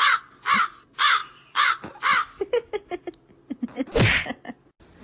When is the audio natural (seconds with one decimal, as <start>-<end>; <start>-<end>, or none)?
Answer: 0.0-5.0